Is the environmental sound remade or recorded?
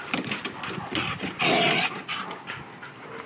recorded